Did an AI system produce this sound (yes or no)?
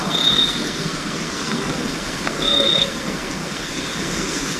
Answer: yes